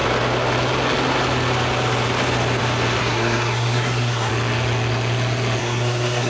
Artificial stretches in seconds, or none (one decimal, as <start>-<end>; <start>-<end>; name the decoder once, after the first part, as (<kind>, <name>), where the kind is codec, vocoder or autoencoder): 3.0-4.3 (codec, SNAC); 5.6-6.3